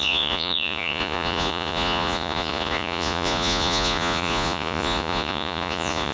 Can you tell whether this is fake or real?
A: fake